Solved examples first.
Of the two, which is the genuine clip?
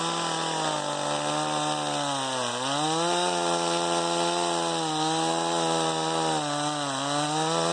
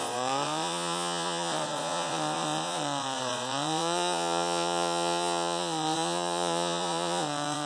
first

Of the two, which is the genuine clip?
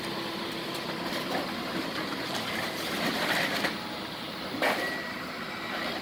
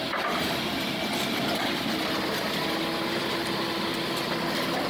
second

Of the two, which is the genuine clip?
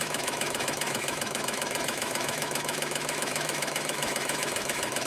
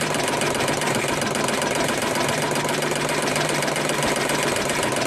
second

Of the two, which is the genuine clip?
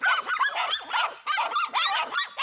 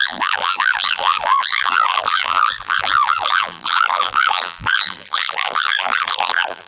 first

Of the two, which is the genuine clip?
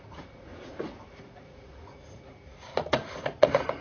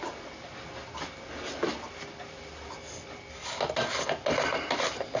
second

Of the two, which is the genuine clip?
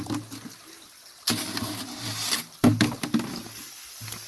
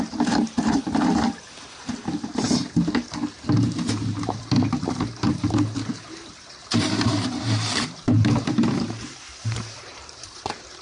first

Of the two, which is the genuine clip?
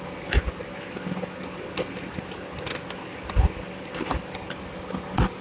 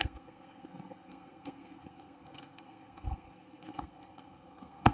first